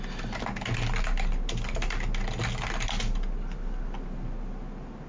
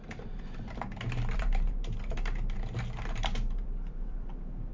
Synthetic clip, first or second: second